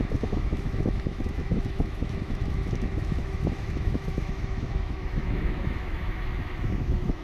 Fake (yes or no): yes